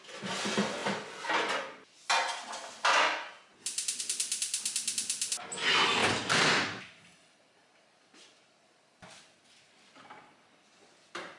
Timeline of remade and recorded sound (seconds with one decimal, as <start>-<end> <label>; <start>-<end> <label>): 0.0-11.4 recorded